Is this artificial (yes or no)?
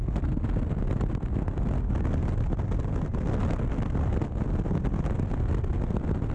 no